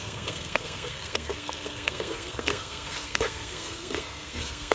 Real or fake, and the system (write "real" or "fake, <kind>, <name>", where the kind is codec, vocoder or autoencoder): fake, codec, SNAC